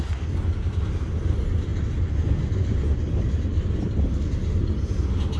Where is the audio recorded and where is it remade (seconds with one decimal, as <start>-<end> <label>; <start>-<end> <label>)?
0.0-5.4 recorded